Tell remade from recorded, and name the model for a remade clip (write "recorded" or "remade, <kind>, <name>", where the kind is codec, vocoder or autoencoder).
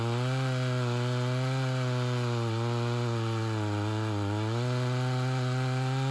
recorded